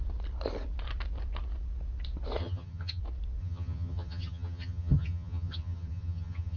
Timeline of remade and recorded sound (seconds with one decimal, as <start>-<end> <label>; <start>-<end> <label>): 0.0-2.4 recorded; 2.4-3.0 remade; 3.0-3.4 recorded; 3.4-6.6 remade